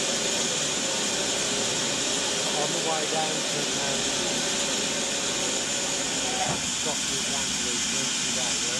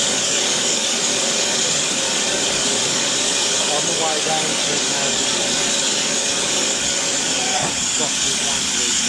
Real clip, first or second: first